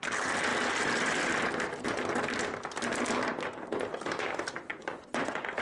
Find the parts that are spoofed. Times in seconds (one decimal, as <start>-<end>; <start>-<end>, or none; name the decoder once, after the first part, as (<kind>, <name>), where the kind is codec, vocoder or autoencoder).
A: 4.7-5.6 (vocoder, Vocos)